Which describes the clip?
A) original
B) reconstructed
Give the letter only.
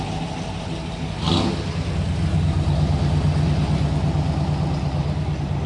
A